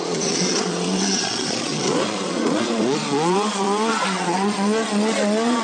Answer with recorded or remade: remade